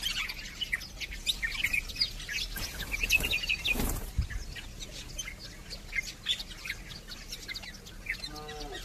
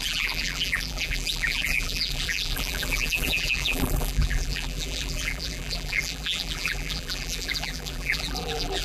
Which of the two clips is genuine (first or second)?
first